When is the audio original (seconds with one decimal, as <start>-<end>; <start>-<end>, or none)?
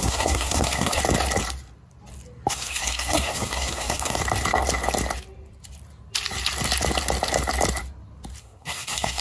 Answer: 1.0-2.5; 4.2-8.4